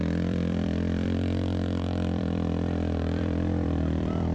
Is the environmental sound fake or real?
fake